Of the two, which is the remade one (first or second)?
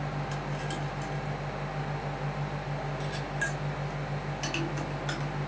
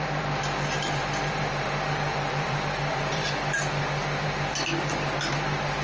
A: second